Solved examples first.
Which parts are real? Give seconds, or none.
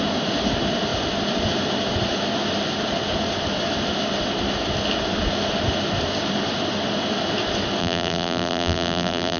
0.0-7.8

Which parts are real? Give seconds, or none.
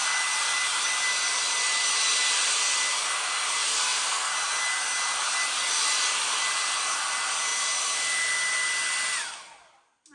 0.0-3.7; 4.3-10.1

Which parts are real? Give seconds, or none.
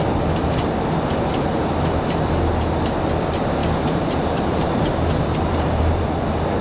0.0-3.6; 5.8-6.6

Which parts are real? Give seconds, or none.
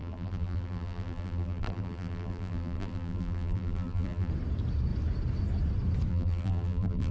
4.3-6.1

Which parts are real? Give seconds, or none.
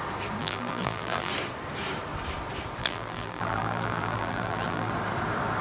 0.0-0.4; 1.3-2.8; 4.9-5.6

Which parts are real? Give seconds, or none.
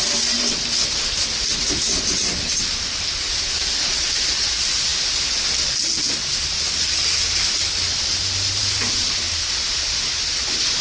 0.0-10.8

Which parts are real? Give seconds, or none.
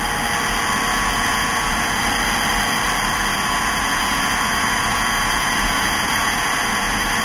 0.0-0.9; 2.0-3.3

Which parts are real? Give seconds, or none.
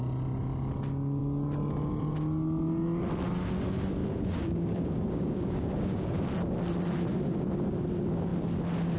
0.0-4.0; 6.3-9.0